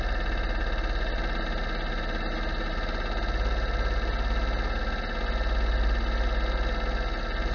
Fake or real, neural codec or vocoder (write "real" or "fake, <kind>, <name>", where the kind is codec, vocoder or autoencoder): real